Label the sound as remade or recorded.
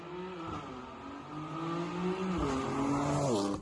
recorded